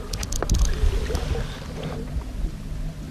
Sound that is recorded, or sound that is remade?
recorded